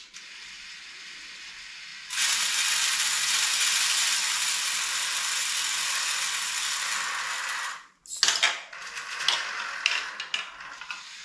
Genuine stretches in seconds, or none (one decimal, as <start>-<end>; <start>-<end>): 0.0-11.2